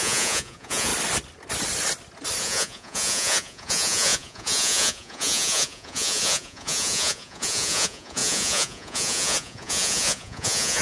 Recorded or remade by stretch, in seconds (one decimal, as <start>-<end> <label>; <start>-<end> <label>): 0.0-0.9 remade; 0.9-2.4 recorded; 2.4-10.8 remade